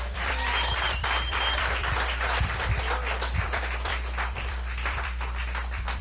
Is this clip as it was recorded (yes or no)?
no